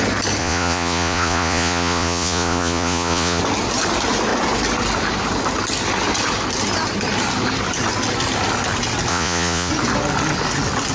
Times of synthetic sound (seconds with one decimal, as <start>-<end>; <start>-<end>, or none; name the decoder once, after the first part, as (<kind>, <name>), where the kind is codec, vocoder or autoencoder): 0.4-3.4 (vocoder, Vocos); 9.1-9.7